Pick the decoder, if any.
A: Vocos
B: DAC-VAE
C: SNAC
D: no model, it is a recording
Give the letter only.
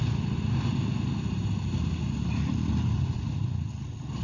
D